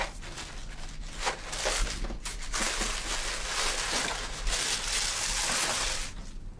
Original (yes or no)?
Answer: yes